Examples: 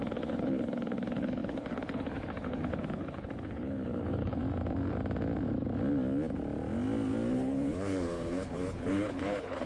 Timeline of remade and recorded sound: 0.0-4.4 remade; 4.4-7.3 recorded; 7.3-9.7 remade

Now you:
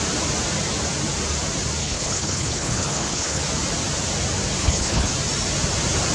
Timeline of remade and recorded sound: 0.0-1.8 recorded; 1.8-3.4 remade; 3.4-4.6 recorded; 4.6-5.1 remade; 5.1-6.1 recorded

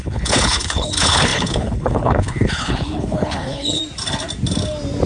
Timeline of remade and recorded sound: 0.0-3.8 remade; 3.8-5.1 recorded